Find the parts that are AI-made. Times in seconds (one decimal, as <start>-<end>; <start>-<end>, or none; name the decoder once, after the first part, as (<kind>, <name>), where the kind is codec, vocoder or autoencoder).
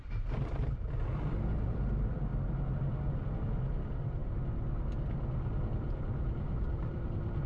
0.0-2.3 (vocoder, BigVGAN v2); 3.1-4.2; 5.7-7.5